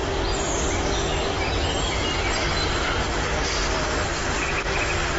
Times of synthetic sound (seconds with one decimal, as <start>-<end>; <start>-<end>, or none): none